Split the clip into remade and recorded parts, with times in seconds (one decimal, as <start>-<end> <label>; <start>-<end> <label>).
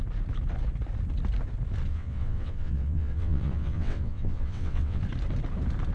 0.0-1.9 recorded; 1.9-5.0 remade; 5.0-5.9 recorded